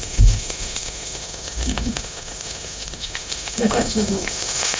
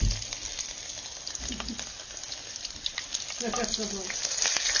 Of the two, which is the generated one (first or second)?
first